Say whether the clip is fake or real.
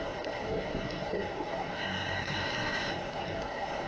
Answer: fake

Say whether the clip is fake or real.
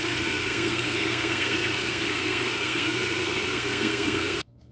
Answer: fake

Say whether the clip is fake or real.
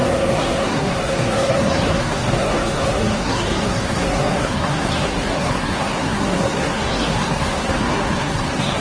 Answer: fake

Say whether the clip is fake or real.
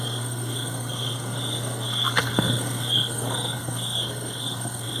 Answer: fake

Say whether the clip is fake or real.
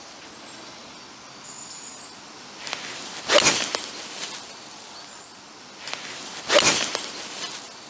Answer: real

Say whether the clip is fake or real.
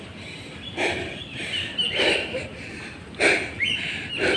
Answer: real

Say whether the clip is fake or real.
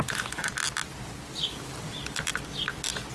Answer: real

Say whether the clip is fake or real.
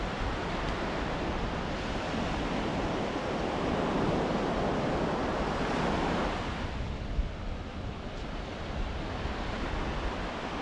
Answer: real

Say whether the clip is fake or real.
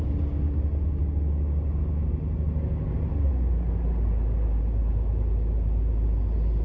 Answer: real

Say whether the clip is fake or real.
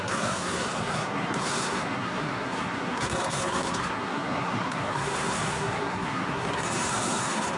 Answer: fake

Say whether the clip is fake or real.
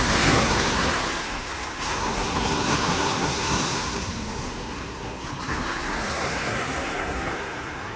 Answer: fake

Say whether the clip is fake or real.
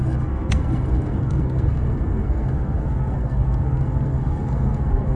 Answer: fake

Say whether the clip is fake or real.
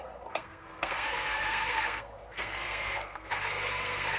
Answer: fake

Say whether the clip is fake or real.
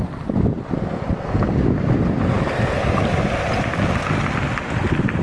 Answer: real